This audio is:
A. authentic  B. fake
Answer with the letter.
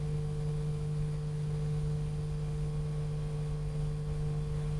B